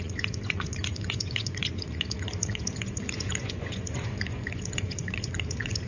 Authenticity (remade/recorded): remade